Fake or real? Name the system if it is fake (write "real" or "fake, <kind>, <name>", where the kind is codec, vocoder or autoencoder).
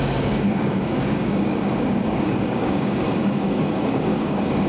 fake, codec, DAC